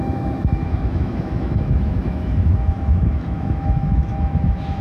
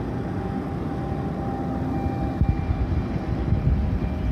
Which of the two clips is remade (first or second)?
first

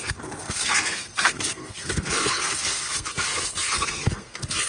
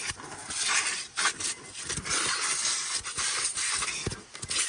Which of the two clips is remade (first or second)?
first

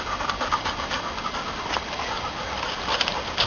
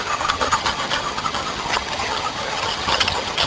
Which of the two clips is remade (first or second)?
second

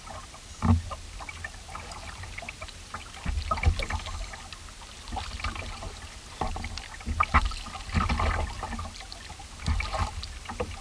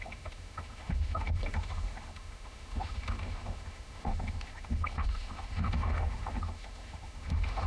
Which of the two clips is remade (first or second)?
second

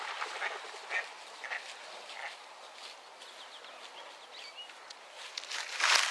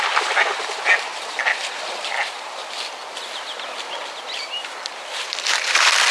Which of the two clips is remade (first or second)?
second